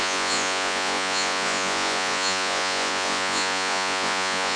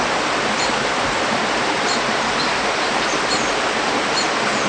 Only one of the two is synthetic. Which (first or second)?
first